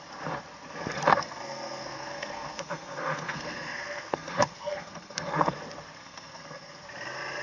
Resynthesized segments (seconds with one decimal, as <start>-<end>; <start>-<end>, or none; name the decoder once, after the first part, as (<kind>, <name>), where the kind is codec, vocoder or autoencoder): 1.1-5.5 (codec, SNAC); 6.0-6.8